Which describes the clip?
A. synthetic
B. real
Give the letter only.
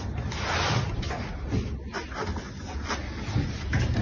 B